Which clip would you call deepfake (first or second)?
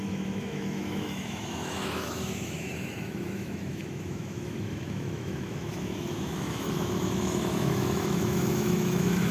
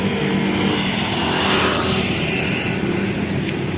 first